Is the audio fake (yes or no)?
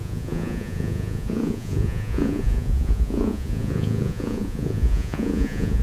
yes